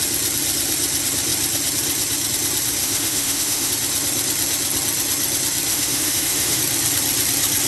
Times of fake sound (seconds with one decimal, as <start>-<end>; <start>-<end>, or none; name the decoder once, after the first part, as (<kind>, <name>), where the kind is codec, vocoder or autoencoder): 2.8-3.7 (autoencoder, DAC-VAE); 5.7-6.6